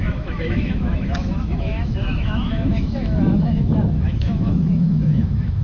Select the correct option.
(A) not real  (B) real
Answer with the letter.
A